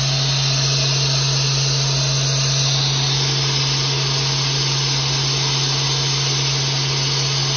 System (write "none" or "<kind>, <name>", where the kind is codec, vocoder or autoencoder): none